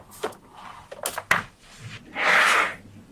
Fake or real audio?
real